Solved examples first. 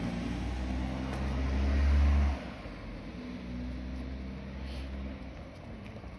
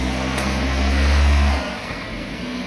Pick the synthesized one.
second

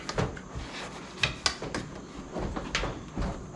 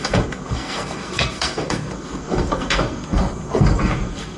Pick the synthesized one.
second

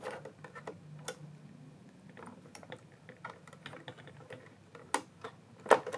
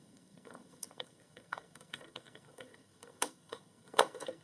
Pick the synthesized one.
second